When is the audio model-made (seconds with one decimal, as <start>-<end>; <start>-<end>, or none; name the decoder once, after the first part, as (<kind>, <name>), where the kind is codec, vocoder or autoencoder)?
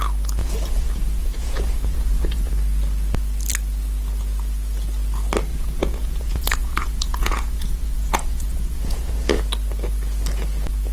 0.4-2.5 (vocoder, Vocos); 5.5-9.4